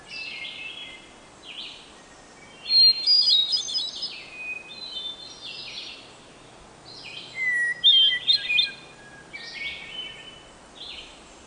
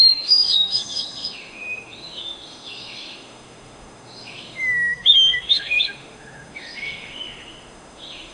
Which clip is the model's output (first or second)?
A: second